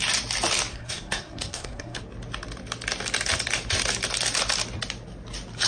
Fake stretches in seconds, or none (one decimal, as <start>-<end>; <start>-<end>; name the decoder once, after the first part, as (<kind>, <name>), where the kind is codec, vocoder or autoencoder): 0.7-2.0 (codec, SNAC)

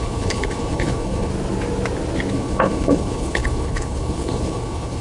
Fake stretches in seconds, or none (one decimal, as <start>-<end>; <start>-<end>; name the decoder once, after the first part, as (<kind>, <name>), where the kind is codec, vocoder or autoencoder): 0.0-1.3 (codec, HILCodec); 2.3-5.0

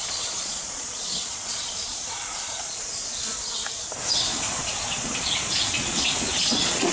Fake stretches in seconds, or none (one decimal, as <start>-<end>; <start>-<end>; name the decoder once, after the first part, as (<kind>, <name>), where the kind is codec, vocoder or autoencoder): 0.0-3.0 (vocoder, Vocos); 4.1-6.9

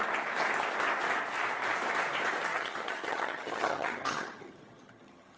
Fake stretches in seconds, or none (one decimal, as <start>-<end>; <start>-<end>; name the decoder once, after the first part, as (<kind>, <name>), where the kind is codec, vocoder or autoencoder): 2.5-5.4 (vocoder, HiFi-GAN)

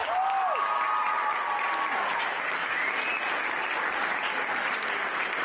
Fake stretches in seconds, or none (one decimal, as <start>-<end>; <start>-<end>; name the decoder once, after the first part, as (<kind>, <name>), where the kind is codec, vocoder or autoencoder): none

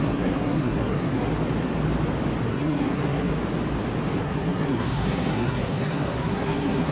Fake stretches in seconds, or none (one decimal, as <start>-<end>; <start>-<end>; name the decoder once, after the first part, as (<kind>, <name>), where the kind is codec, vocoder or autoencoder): 0.0-1.3 (codec, SNAC); 2.5-3.3; 4.2-6.9